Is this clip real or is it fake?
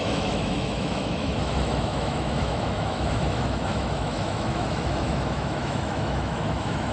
fake